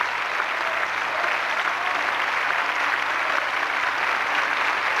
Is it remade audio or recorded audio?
recorded